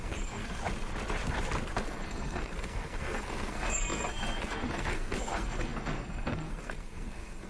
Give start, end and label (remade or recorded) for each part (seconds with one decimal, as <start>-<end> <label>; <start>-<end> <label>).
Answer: 0.0-0.6 remade; 0.6-1.8 recorded; 1.8-7.5 remade